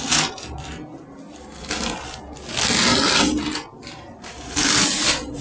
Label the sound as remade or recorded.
recorded